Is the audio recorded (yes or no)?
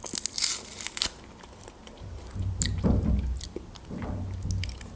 yes